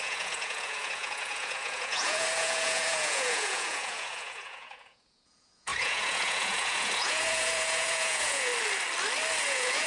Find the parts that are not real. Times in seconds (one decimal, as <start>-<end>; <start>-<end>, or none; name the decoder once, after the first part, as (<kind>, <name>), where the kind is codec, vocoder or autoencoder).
0.0-8.5 (vocoder, Vocos); 9.4-9.9